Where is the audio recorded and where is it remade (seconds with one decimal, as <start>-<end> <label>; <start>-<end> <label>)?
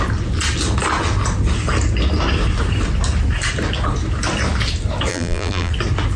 0.0-5.1 recorded; 5.1-5.7 remade; 5.7-6.2 recorded